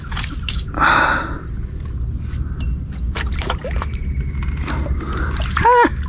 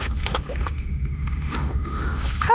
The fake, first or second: second